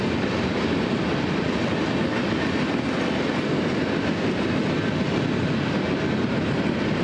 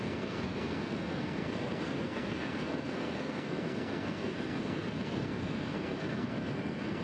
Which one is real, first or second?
first